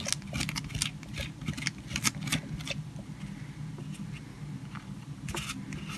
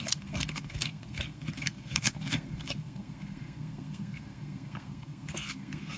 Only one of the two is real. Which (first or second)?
first